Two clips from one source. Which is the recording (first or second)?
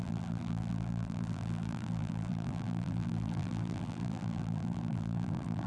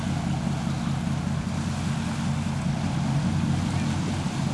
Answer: second